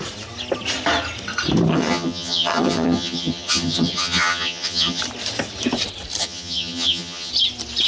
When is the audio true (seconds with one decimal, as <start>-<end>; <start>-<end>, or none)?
0.0-1.7; 5.0-6.2; 7.3-7.9